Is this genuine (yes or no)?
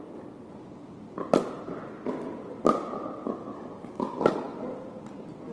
yes